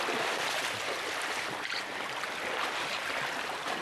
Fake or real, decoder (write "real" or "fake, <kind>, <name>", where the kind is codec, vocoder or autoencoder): real